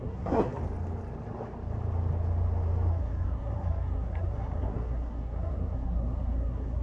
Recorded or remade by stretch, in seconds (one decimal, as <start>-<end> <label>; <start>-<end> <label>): 0.0-0.6 remade; 0.6-2.9 recorded; 2.9-6.8 remade